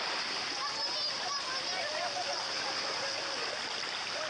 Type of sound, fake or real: real